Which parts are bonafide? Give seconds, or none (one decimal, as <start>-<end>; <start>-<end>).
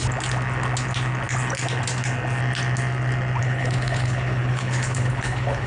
0.0-3.4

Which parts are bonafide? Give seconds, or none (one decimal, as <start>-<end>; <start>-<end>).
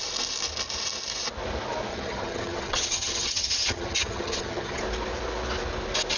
0.0-1.9; 4.8-6.2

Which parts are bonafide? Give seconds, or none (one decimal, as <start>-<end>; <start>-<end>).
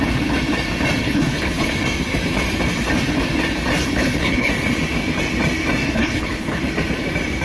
0.0-1.0; 1.7-3.8; 4.5-6.0; 6.6-7.4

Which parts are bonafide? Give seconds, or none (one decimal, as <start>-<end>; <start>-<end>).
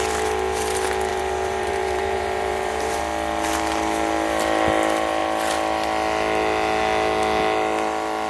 0.0-1.1; 3.0-8.3